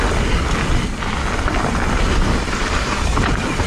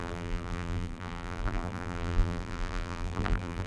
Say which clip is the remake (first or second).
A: second